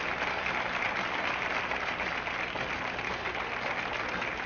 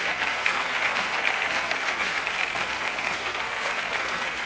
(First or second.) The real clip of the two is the first